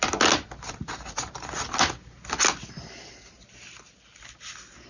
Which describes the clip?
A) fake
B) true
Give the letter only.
B